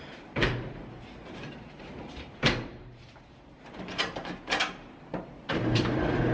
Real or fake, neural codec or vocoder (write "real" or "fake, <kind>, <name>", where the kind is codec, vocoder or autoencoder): fake, vocoder, BigVGAN v2